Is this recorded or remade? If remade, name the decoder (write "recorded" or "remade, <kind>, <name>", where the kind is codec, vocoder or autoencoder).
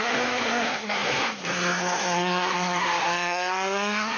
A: remade, codec, SNAC